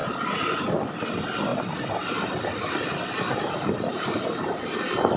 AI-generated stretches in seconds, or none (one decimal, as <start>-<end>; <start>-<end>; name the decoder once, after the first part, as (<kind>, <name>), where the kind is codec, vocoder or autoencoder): none